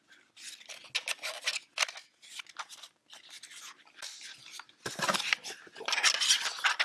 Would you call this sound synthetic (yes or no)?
no